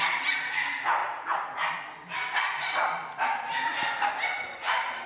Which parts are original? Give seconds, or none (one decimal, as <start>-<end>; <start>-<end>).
0.0-5.1